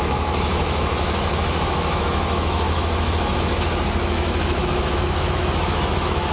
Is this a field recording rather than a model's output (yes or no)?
no